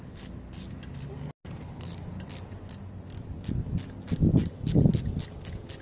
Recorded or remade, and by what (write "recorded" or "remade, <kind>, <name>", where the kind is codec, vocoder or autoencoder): recorded